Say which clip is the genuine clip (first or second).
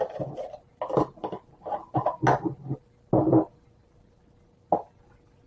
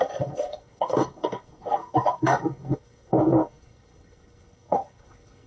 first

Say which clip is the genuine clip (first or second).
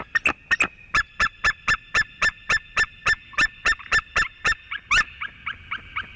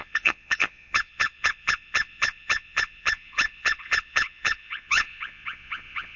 first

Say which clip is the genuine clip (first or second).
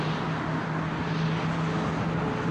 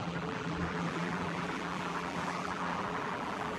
first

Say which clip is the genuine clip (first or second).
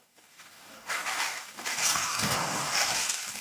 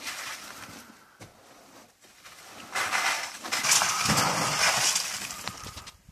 second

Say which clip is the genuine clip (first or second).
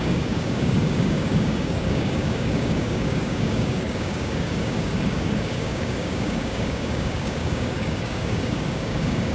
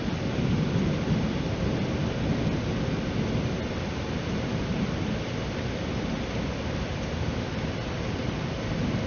second